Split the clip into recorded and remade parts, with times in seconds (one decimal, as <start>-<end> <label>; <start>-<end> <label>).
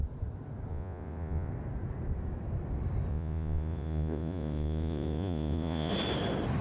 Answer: 0.0-0.7 recorded; 0.7-1.5 remade; 1.5-3.1 recorded; 3.1-5.9 remade; 5.9-6.6 recorded